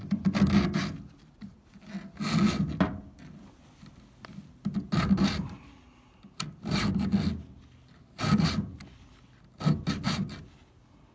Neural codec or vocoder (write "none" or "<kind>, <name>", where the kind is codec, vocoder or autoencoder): none